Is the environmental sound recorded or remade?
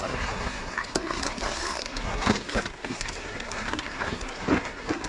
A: remade